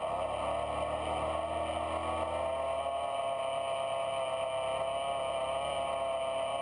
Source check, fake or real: real